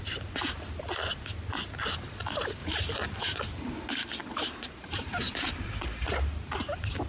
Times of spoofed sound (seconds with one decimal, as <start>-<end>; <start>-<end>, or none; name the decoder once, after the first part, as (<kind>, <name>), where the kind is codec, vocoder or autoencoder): 2.6-3.9 (vocoder, BigVGAN v2); 4.4-7.1